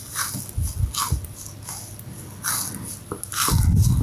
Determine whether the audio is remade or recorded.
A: recorded